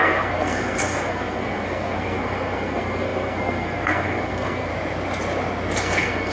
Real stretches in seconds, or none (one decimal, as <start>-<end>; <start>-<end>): 4.7-5.8